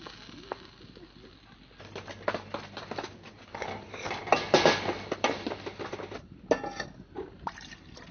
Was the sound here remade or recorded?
recorded